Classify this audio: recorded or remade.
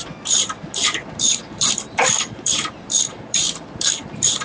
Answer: remade